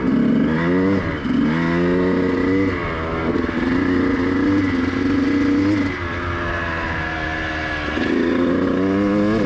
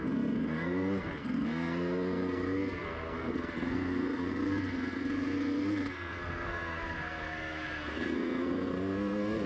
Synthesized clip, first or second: second